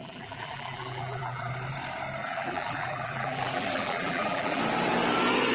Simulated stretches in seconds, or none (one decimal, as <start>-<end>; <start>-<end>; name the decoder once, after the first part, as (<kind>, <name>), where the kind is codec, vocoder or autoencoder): 0.0-1.5 (vocoder, BigVGAN v2); 2.2-4.6